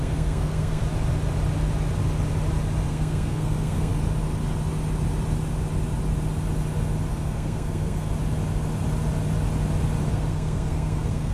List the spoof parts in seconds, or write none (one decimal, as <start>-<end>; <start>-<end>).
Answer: 0.0-0.8; 2.9-3.9; 7.1-8.1; 10.1-11.3